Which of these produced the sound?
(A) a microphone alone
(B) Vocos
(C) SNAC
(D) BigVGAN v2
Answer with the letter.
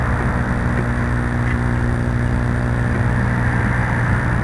A